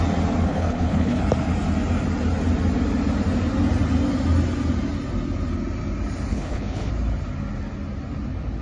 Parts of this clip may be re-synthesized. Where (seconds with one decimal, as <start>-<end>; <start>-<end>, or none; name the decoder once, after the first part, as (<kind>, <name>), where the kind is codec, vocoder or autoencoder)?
0.5-1.2 (codec, HILCodec); 6.3-6.9